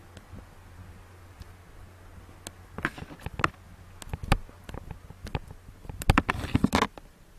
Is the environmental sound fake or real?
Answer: real